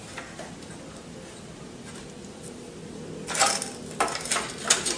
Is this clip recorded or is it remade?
recorded